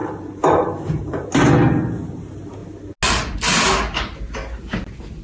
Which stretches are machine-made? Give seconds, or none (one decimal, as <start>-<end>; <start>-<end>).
0.0-1.3